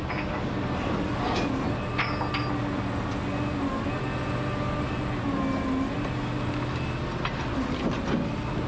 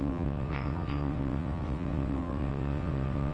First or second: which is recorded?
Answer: first